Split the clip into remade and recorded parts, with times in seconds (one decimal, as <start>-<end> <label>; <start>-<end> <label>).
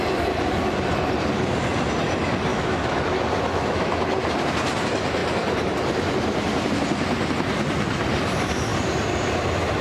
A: 0.0-2.5 recorded; 2.5-3.0 remade; 3.0-3.5 recorded; 3.5-4.0 remade; 4.0-9.8 recorded